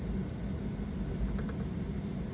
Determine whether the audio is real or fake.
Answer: real